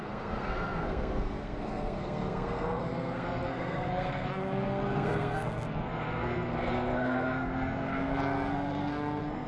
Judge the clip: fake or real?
fake